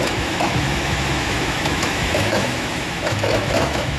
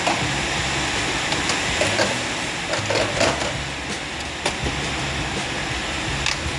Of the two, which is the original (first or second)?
second